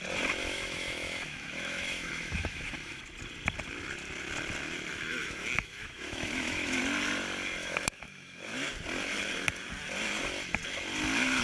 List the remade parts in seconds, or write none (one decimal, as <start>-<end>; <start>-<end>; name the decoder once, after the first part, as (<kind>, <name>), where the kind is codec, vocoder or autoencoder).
0.4-3.0 (autoencoder, DAC-VAE); 4.9-6.8; 7.6-8.4

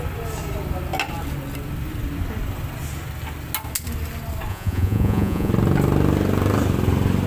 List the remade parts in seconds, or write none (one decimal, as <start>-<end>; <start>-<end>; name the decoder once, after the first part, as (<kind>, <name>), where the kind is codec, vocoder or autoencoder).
4.5-5.5 (vocoder, Vocos)

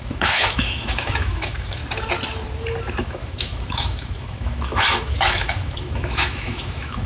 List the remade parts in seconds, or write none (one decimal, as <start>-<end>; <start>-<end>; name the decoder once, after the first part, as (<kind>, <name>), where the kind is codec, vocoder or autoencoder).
0.0-1.8 (autoencoder, DAC-VAE); 3.0-7.1

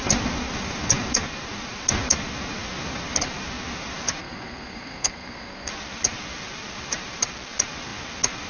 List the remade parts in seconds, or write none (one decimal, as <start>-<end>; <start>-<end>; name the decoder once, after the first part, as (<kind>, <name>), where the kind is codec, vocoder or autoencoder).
4.2-5.7 (codec, SNAC)

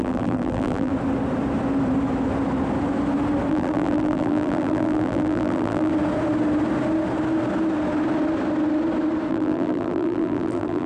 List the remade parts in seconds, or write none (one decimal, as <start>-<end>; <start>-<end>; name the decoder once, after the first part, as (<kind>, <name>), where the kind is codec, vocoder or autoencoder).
0.0-0.9 (vocoder, BigVGAN v2); 3.5-5.9; 9.3-10.9

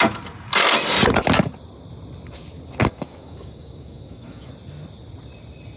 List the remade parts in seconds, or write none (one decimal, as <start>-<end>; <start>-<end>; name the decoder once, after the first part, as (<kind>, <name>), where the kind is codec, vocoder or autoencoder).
2.8-4.5 (codec, DAC)

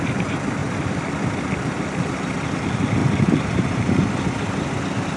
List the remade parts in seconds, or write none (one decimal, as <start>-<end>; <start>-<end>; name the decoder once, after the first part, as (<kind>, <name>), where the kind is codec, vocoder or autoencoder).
3.0-4.1 (vocoder, BigVGAN v2)

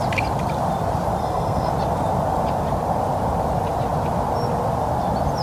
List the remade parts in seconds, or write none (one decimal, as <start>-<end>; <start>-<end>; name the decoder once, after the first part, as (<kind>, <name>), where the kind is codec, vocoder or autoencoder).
1.2-1.7 (codec, SNAC)